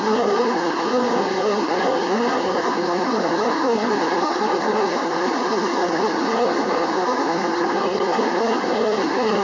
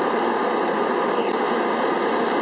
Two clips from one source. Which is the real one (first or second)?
second